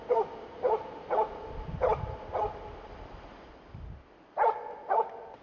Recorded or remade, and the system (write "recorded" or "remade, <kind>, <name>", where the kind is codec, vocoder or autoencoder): recorded